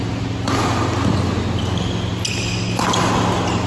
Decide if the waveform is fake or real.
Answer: real